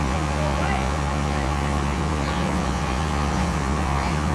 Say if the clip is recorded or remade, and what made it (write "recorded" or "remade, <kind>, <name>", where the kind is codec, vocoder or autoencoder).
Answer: remade, vocoder, Vocos